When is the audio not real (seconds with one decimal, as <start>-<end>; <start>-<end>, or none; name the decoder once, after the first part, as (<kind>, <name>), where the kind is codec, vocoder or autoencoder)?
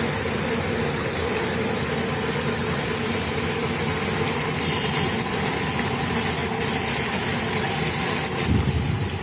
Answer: none